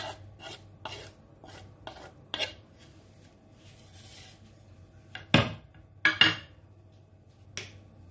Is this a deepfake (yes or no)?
no